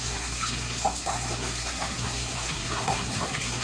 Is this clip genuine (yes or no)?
no